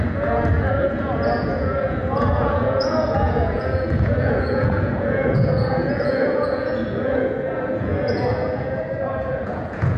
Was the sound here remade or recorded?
remade